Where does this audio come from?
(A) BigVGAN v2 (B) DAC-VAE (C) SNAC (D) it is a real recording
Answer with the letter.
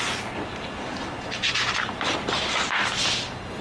D